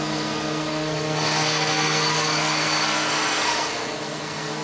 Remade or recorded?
remade